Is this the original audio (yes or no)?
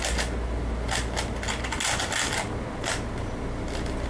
yes